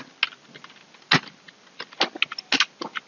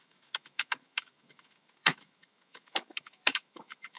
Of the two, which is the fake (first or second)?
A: second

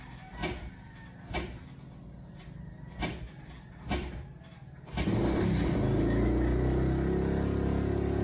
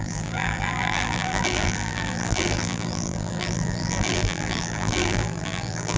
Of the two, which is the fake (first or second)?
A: second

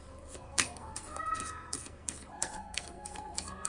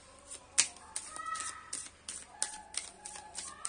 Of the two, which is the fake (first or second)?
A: first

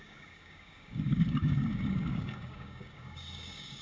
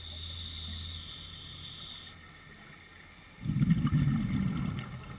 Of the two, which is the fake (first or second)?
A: first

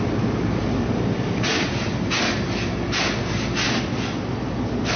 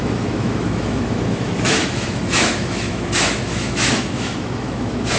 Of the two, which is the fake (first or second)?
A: second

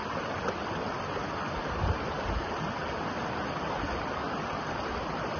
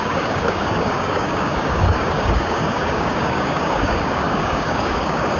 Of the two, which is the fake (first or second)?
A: second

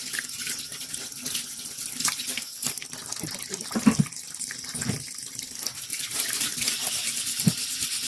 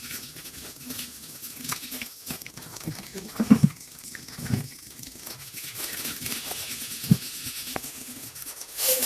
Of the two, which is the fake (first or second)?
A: second